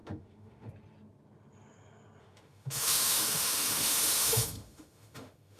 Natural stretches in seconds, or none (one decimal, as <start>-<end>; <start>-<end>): 0.7-2.2